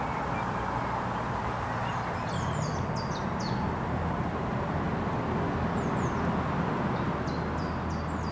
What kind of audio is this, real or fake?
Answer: real